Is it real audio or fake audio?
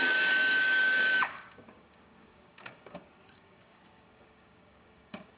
fake